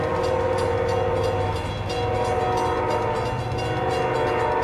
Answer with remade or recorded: recorded